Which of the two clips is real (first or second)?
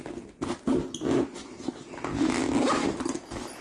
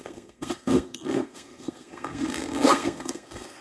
first